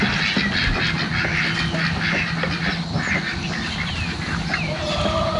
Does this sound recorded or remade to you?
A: recorded